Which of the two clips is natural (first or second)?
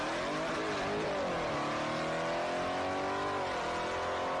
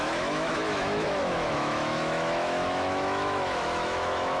first